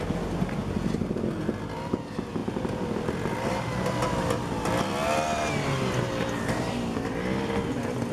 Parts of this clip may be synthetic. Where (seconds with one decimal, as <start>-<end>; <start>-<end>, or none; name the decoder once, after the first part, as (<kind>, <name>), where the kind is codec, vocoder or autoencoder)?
none